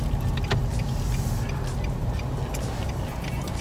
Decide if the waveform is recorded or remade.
recorded